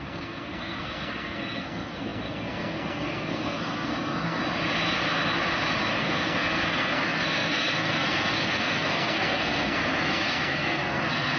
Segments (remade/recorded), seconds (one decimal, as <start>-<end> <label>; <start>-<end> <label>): 0.0-4.4 remade; 4.4-6.0 recorded; 6.0-11.4 remade